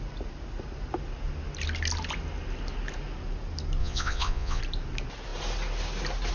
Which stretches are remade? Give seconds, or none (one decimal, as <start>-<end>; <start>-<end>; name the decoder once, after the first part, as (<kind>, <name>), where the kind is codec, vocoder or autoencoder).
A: 3.8-4.6 (vocoder, Vocos)